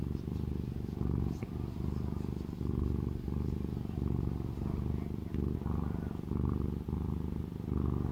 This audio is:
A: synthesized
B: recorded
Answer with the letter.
B